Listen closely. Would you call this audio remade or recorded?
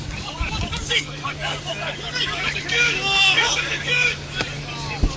remade